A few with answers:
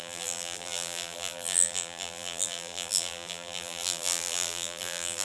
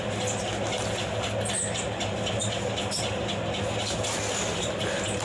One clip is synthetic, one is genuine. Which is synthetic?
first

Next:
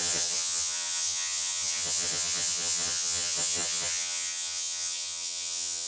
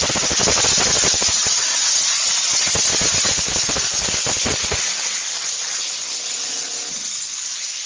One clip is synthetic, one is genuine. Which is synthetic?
first